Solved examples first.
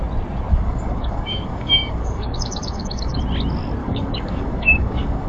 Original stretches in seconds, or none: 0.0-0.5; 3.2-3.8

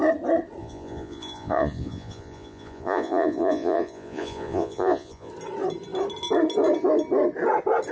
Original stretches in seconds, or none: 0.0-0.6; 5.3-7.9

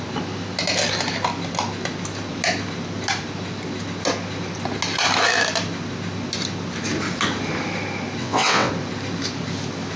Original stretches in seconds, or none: 0.0-8.2; 8.7-10.0

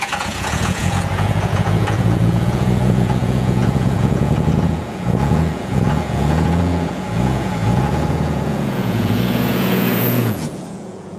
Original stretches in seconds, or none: none

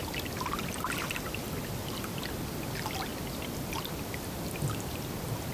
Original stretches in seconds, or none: 0.0-5.5